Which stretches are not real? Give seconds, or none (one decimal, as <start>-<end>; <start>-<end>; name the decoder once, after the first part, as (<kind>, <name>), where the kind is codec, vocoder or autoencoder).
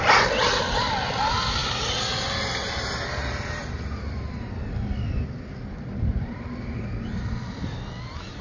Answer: none